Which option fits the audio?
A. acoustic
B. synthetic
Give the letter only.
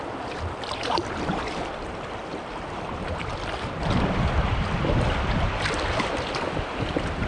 B